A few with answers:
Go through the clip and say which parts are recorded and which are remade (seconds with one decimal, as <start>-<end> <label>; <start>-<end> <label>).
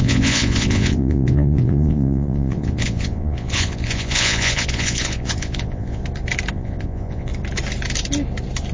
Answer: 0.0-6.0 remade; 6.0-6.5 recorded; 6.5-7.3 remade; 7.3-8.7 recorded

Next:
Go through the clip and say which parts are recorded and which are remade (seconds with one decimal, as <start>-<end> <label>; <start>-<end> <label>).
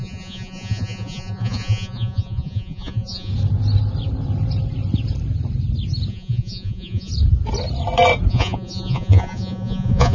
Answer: 0.0-3.3 remade; 3.3-6.1 recorded; 6.1-7.1 remade; 7.1-8.3 recorded; 8.3-10.1 remade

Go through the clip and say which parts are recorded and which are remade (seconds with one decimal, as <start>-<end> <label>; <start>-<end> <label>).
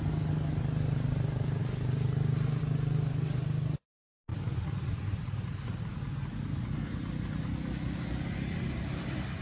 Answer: 0.0-9.4 recorded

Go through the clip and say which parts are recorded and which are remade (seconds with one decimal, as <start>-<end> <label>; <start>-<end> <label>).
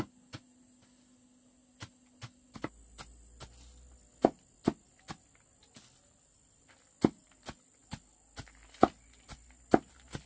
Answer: 0.0-10.3 recorded